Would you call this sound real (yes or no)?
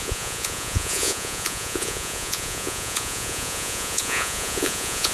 no